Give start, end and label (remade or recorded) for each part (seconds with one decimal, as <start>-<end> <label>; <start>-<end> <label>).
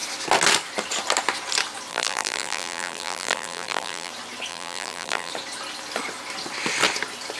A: 0.0-1.9 recorded; 1.9-4.1 remade; 4.1-4.5 recorded; 4.5-5.3 remade; 5.3-7.4 recorded